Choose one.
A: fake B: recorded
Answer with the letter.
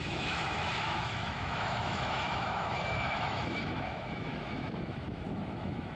A